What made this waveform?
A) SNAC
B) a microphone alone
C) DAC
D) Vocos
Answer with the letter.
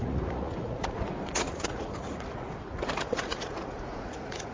D